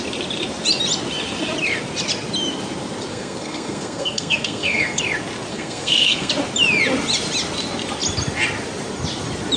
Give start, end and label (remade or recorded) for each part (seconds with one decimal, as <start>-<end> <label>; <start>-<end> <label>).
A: 0.0-3.1 recorded; 3.1-5.0 remade; 5.0-5.5 recorded; 5.5-6.3 remade; 6.3-9.6 recorded